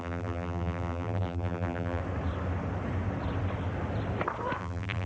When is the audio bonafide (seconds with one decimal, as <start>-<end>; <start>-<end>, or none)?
2.0-4.6